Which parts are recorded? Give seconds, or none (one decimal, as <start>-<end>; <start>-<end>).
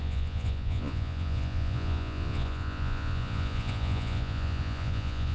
none